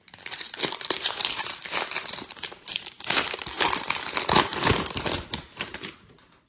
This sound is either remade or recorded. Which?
remade